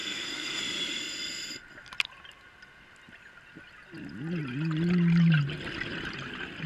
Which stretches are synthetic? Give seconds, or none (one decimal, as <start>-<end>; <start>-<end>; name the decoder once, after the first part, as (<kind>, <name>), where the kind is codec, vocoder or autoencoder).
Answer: 0.0-0.6 (codec, SNAC)